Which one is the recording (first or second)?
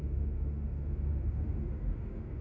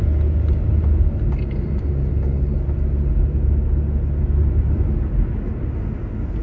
second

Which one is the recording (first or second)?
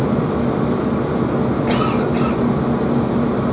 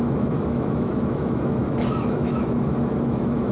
first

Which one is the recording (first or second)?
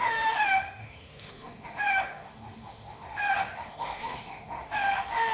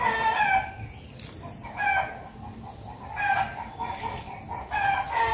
second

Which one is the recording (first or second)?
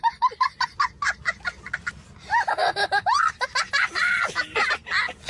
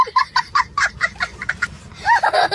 first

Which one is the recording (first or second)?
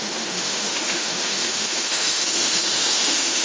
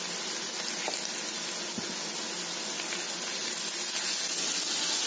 second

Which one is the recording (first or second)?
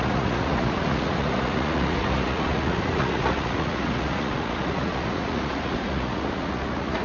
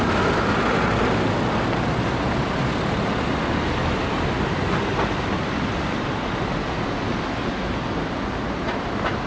second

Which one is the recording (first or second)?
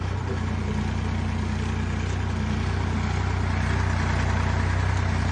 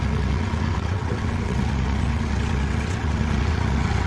first